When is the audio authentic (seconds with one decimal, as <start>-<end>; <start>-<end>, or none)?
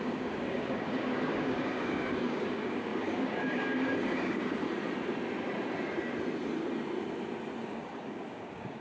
4.6-7.6